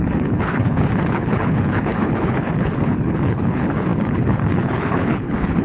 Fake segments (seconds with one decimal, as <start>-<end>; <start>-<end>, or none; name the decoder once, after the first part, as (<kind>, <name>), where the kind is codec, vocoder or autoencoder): 0.0-5.6 (codec, HILCodec)